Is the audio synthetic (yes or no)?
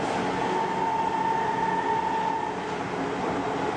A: no